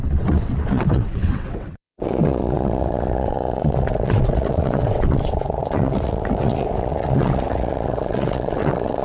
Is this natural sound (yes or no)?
no